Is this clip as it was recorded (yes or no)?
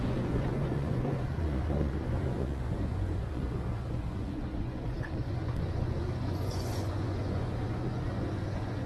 no